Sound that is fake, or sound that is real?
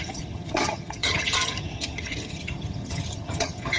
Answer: fake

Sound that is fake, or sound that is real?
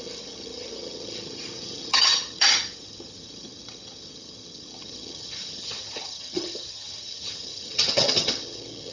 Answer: fake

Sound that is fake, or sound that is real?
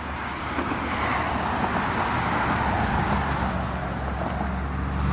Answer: real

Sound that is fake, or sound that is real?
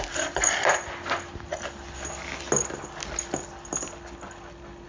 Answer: real